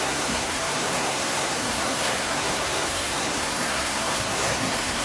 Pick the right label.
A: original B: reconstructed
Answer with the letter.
B